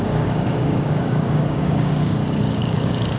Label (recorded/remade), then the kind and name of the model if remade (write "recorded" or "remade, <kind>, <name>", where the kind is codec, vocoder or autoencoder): remade, codec, DAC